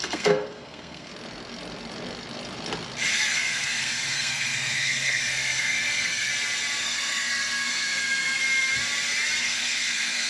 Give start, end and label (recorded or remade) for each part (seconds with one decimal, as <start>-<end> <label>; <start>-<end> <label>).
0.0-1.1 remade; 1.1-3.1 recorded; 3.1-6.3 remade; 6.3-6.8 recorded; 6.8-8.4 remade; 8.4-9.4 recorded; 9.4-10.3 remade